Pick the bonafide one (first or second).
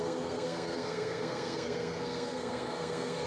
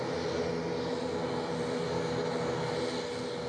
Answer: second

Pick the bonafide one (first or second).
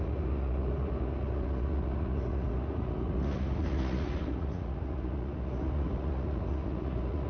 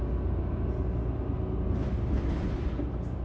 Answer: second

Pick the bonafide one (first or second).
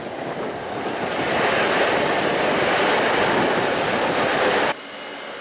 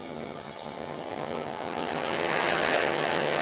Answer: first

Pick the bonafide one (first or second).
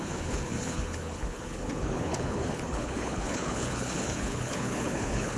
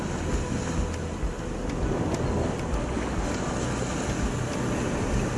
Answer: second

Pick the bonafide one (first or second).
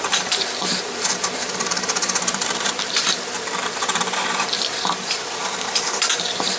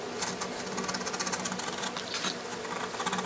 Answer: second